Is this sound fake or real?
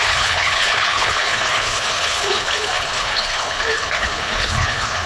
fake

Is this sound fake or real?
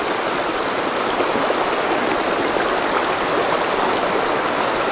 real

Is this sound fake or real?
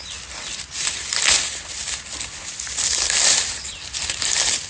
real